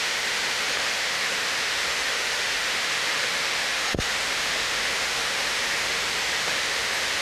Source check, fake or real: fake